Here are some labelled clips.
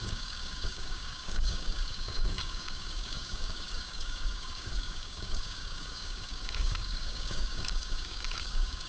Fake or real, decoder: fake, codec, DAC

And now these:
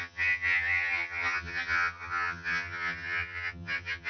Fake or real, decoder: fake, vocoder, HiFi-GAN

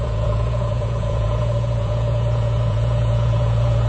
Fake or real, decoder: fake, vocoder, Vocos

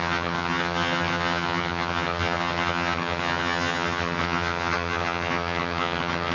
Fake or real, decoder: fake, vocoder, HiFi-GAN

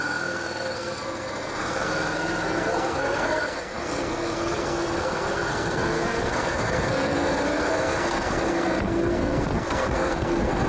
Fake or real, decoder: fake, codec, SNAC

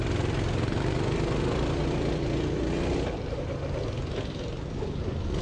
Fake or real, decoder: real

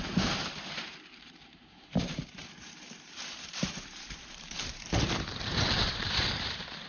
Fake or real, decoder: fake, vocoder, BigVGAN v2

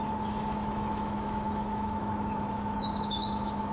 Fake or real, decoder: fake, autoencoder, DAC-VAE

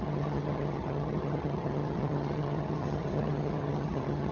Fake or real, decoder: fake, vocoder, HiFi-GAN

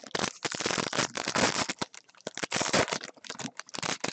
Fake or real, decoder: real